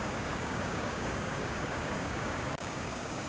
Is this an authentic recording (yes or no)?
no